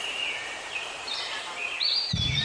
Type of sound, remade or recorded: remade